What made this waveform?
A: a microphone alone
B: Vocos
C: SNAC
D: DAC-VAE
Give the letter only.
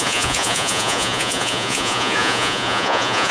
B